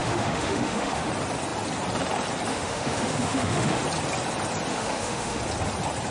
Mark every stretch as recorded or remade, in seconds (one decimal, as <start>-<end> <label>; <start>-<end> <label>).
0.0-1.1 remade; 1.1-2.5 recorded; 2.5-3.8 remade; 3.8-4.7 recorded; 4.7-5.4 remade; 5.4-6.1 recorded